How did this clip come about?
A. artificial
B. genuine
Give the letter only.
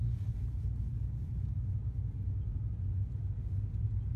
B